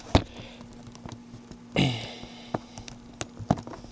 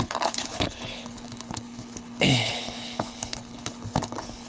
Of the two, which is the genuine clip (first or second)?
first